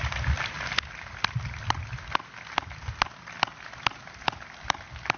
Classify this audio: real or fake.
real